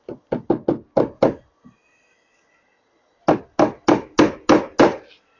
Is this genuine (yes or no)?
yes